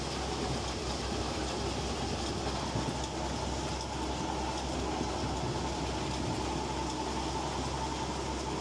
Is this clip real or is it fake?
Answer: real